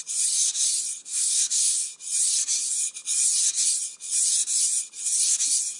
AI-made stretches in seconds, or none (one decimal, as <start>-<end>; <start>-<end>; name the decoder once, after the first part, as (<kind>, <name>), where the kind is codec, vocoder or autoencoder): 1.0-1.9 (codec, SNAC)